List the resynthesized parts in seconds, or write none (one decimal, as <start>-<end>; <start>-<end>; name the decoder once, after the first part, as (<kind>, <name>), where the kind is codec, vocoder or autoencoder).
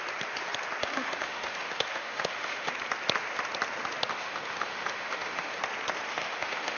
0.8-2.7 (autoencoder, DAC-VAE); 4.1-5.6; 6.1-6.8